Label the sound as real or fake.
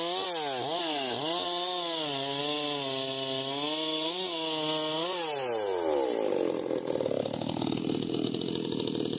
real